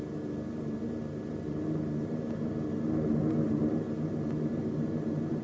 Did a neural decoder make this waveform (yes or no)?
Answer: no